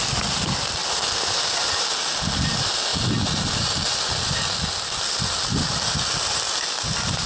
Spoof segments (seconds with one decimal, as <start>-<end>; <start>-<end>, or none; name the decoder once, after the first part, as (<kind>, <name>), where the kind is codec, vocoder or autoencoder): 0.8-1.8 (vocoder, BigVGAN v2)